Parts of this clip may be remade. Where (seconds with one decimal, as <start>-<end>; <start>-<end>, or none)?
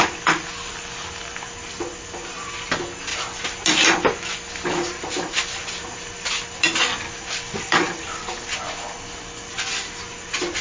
none